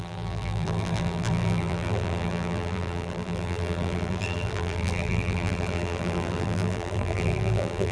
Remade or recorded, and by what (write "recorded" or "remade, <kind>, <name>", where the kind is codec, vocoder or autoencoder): remade, vocoder, BigVGAN v2